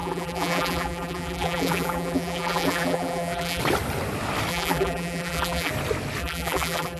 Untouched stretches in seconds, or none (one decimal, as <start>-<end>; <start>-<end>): 3.6-4.5; 5.7-6.2

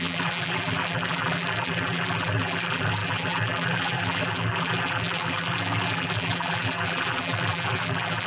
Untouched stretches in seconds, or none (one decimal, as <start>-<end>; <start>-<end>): none

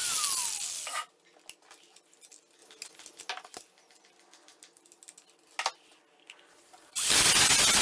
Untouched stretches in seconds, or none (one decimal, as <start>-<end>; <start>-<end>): 0.0-7.8

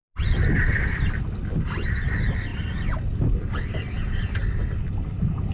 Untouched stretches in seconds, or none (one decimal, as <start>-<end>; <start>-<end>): 0.0-5.5

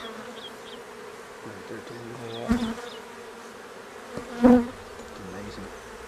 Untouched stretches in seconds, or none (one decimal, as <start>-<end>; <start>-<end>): 0.0-6.1

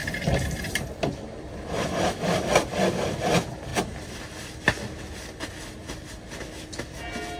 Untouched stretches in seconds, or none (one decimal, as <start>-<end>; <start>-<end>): 0.0-7.4

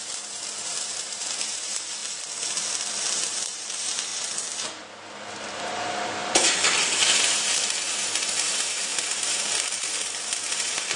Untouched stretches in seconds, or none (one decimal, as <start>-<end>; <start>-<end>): 2.0-3.1; 4.1-5.6

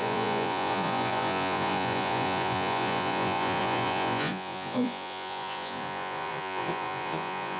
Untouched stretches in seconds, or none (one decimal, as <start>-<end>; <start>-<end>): none